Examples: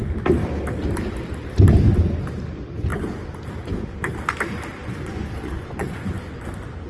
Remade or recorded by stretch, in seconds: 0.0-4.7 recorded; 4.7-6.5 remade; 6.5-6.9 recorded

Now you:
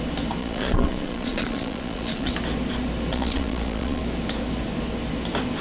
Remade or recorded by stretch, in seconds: 0.0-0.4 recorded; 0.4-2.3 remade; 2.3-3.1 recorded; 3.1-4.0 remade; 4.0-5.6 recorded

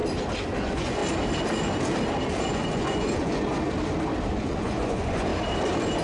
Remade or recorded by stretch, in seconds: 0.0-0.6 recorded; 0.6-1.0 remade; 1.0-2.4 recorded; 2.4-3.5 remade; 3.5-4.3 recorded; 4.3-5.3 remade; 5.3-6.0 recorded

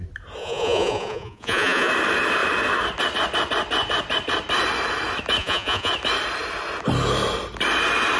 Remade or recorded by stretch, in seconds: 0.0-0.4 recorded; 0.4-1.9 remade; 1.9-5.4 recorded; 5.4-5.9 remade; 5.9-8.2 recorded

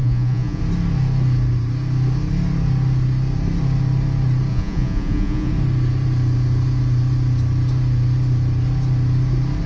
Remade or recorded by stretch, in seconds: 0.0-0.6 remade; 0.6-4.5 recorded; 4.5-5.5 remade; 5.5-9.7 recorded

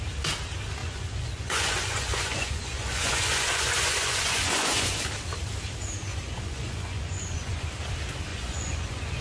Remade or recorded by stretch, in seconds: 0.0-0.8 recorded; 0.8-5.0 remade; 5.0-6.1 recorded; 6.1-7.7 remade; 7.7-8.3 recorded; 8.3-9.2 remade

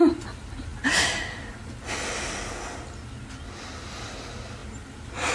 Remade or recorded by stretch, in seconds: 0.0-5.3 recorded